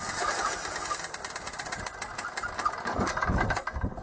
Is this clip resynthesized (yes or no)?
no